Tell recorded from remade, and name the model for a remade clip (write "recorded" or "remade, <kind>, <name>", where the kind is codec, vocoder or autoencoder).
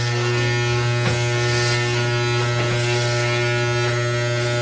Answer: recorded